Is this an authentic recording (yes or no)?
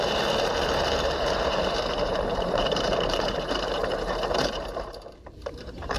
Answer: no